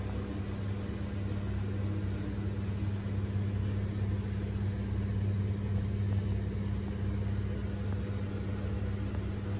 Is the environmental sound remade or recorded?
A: recorded